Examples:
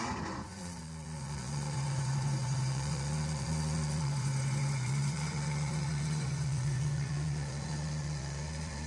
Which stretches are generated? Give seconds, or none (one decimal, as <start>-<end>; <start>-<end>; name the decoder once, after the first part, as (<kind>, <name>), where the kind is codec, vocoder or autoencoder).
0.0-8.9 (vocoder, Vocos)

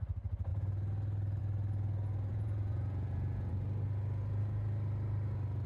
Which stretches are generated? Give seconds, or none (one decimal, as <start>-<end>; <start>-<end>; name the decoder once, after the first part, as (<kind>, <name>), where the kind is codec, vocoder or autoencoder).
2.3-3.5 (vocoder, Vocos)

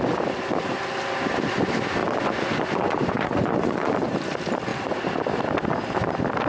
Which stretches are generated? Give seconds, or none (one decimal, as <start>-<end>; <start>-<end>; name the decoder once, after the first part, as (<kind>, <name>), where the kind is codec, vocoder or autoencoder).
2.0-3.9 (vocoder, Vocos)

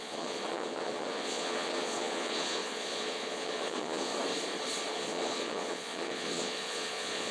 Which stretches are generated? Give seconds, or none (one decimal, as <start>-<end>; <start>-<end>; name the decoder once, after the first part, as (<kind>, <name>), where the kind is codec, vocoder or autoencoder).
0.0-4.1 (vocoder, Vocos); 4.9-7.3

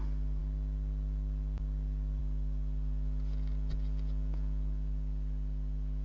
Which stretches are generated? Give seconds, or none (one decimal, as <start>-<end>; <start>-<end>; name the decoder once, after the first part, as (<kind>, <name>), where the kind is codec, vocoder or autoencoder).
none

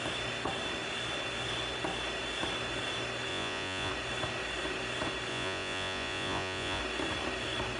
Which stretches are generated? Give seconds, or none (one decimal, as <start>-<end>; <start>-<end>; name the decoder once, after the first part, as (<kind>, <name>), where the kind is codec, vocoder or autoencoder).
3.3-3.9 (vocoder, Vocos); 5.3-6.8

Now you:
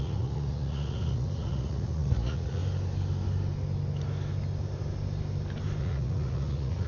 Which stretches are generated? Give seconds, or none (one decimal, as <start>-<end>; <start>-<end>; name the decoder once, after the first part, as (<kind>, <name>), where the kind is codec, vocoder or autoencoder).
0.0-2.6 (vocoder, Vocos); 5.8-6.9

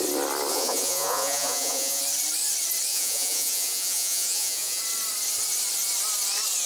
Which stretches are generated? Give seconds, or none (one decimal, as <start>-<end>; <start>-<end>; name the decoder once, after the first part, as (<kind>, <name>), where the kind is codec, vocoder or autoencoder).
0.5-2.0 (vocoder, Vocos); 2.9-4.8